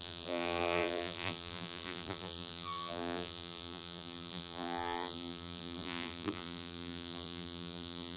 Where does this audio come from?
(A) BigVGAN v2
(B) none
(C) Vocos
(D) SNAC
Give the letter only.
A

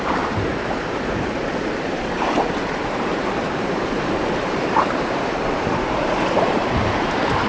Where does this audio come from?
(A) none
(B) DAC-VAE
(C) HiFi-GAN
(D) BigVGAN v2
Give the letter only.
D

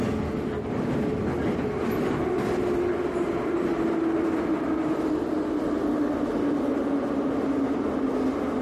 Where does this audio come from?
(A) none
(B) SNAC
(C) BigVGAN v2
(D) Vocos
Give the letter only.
A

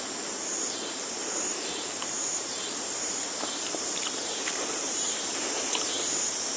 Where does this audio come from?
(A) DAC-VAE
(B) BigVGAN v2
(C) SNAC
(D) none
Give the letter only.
B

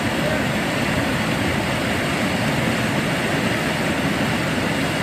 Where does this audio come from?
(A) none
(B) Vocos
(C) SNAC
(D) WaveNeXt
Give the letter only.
A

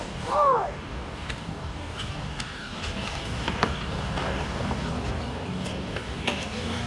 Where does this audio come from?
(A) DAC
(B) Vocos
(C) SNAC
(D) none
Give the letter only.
A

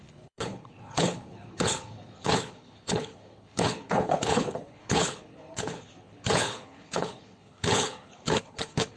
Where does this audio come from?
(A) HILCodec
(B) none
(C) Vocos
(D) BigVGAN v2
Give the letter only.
A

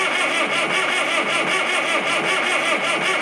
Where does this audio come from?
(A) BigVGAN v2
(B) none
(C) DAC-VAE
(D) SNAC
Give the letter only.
B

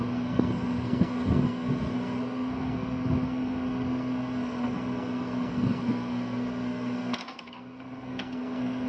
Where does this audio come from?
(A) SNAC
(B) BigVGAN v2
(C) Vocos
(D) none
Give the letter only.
A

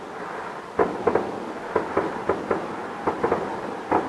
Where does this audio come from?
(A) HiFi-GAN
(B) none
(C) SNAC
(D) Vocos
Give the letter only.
B